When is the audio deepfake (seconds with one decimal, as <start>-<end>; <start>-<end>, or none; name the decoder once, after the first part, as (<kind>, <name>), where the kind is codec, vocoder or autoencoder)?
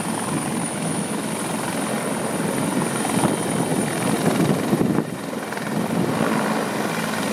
0.6-1.3 (autoencoder, DAC-VAE)